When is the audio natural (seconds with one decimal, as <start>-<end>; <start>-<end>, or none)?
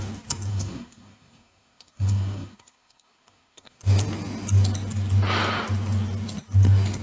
0.0-0.5; 3.8-7.0